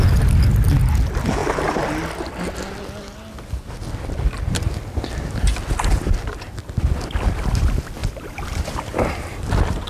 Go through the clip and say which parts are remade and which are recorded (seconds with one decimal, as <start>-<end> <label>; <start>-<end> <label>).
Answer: 0.0-8.0 recorded; 8.0-9.4 remade; 9.4-9.9 recorded